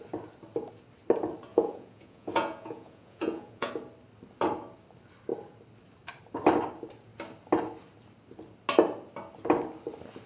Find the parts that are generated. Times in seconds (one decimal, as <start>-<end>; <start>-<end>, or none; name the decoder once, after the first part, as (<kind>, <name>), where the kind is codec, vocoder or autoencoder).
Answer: 1.5-3.7 (vocoder, Vocos)